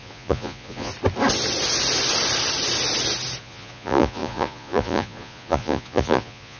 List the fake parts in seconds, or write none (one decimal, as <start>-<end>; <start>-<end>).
0.0-0.9; 3.4-6.6